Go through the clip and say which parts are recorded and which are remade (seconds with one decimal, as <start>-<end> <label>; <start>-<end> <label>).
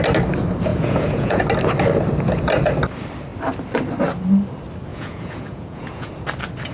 0.0-0.7 recorded; 0.7-1.4 remade; 1.4-4.9 recorded; 4.9-6.1 remade; 6.1-6.7 recorded